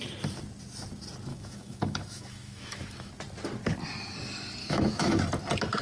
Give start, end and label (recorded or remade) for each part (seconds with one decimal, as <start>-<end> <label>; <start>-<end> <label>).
0.0-1.3 recorded; 1.3-3.1 remade; 3.1-4.6 recorded; 4.6-5.2 remade; 5.2-5.8 recorded